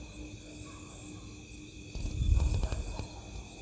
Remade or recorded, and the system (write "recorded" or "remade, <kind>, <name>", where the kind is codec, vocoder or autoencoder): recorded